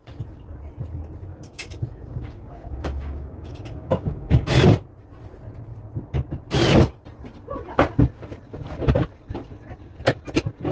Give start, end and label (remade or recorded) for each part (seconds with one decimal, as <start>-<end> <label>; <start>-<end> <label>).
0.0-1.3 recorded; 1.3-4.3 remade; 4.3-10.7 recorded